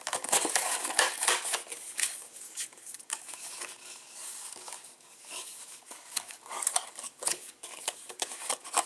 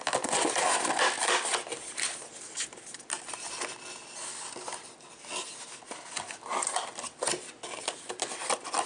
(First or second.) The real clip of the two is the second